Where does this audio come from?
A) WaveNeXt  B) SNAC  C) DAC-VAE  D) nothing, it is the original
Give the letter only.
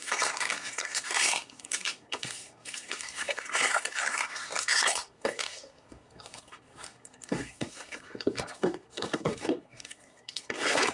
B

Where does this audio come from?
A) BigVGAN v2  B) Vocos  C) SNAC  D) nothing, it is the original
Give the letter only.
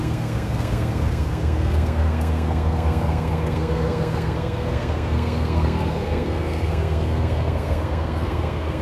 C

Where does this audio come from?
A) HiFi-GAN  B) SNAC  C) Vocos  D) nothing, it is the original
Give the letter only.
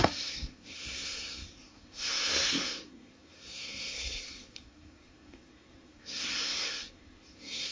B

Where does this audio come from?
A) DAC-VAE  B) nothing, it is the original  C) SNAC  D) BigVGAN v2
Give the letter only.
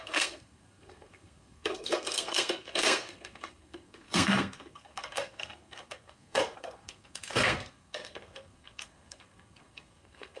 C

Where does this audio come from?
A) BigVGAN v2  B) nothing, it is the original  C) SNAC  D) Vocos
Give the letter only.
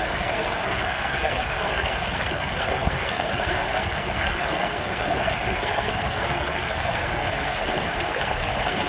C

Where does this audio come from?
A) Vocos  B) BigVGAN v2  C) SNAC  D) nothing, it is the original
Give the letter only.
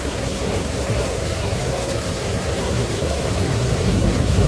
C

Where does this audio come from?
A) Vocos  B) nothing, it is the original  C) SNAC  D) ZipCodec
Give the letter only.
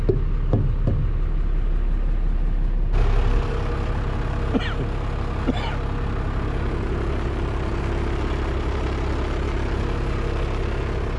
B